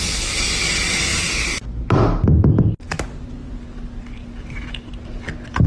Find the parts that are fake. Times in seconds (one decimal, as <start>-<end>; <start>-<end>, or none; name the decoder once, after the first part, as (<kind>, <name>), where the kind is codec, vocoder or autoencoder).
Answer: none